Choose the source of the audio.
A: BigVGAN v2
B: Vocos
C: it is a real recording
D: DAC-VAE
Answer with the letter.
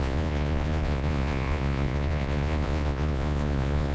B